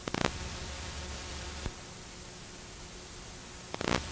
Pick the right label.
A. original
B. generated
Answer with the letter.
B